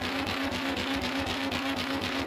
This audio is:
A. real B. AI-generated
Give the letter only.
B